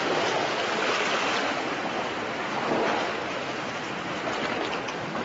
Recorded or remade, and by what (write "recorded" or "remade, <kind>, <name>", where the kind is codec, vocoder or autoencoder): recorded